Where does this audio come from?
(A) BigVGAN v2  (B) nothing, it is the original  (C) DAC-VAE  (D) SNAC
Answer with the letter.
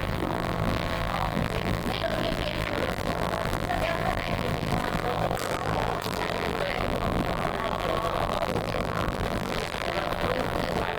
A